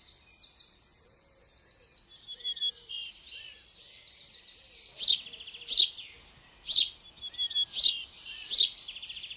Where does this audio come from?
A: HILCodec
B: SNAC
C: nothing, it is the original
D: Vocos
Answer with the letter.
C